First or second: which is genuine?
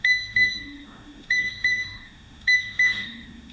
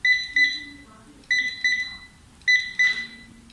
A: second